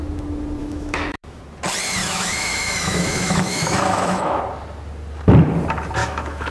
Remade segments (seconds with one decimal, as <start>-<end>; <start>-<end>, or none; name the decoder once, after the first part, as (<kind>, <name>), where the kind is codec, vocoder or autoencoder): 0.6-1.4 (autoencoder, DAC-VAE); 2.0-4.4; 6.0-6.5